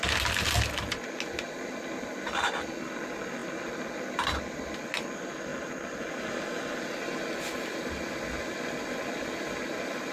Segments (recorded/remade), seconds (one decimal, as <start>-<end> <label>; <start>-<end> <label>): 0.0-10.1 recorded